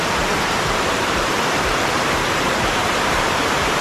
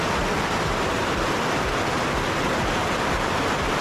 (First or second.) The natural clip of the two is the second